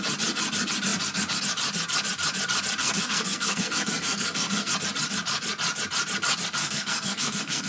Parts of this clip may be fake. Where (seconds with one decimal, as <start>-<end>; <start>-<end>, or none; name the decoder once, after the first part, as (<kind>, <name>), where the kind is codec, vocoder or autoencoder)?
2.8-4.7 (codec, SNAC); 6.6-7.7